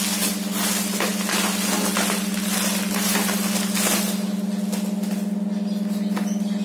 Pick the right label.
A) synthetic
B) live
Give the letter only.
B